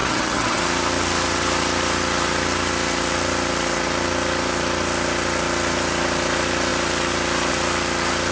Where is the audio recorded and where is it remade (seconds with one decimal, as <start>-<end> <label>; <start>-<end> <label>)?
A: 0.0-0.6 remade; 0.6-8.3 recorded